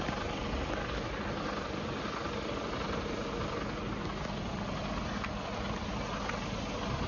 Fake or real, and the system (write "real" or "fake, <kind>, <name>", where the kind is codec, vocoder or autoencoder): real